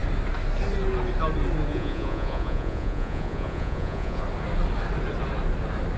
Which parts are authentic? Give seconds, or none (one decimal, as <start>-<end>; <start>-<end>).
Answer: 0.0-1.7; 4.2-6.0